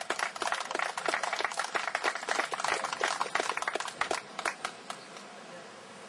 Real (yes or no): yes